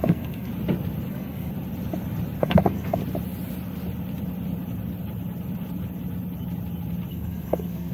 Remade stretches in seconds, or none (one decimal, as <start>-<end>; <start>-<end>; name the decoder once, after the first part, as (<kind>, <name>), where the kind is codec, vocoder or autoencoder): 0.0-0.5 (codec, SNAC); 1.1-1.5; 2.4-3.0; 7.1-7.9